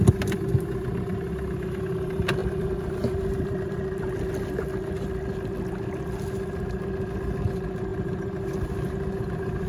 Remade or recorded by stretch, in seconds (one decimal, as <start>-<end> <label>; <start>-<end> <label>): 0.0-2.4 recorded; 2.4-3.7 remade; 3.7-9.7 recorded